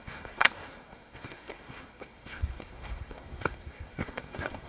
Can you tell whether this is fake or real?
fake